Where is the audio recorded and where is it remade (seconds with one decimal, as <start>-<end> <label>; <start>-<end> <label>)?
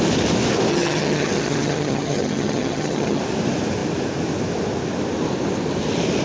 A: 0.0-0.7 recorded; 0.7-3.2 remade; 3.2-6.2 recorded